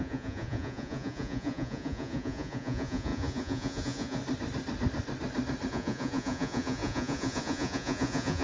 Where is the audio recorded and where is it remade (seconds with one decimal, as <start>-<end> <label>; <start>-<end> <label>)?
0.0-4.2 remade; 4.2-5.7 recorded; 5.7-8.4 remade